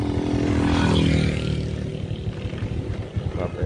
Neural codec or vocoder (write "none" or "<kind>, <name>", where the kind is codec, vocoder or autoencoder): none